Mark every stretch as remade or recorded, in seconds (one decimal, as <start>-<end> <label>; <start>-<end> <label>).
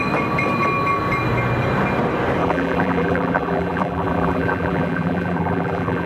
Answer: 0.0-2.4 recorded; 2.4-6.1 remade